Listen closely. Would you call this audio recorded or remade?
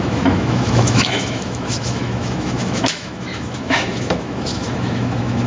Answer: remade